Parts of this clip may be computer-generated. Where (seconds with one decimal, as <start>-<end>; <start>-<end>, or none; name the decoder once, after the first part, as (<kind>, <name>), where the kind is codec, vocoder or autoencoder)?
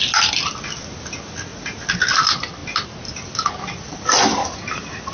none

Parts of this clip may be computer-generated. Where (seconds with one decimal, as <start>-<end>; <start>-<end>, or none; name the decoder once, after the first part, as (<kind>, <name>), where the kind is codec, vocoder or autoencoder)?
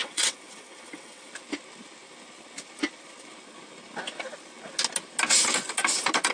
0.0-1.3 (vocoder, WaveNeXt)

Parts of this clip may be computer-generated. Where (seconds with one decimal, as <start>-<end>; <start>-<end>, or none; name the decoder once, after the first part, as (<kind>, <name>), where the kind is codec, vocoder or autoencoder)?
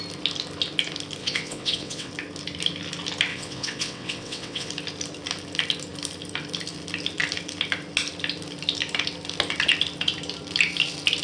1.2-2.1 (vocoder, WaveNeXt); 3.3-4.7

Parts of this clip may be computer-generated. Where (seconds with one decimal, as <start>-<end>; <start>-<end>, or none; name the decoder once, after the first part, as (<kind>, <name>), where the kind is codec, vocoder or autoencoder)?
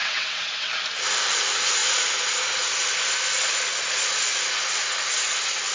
0.0-0.7 (vocoder, WaveNeXt)